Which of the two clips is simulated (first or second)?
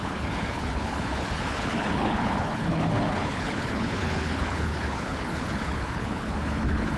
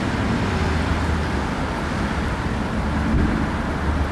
first